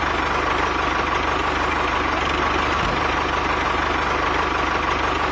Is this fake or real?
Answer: real